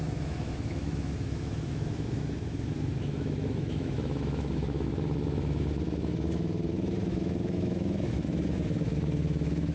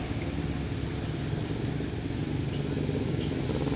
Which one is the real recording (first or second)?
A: second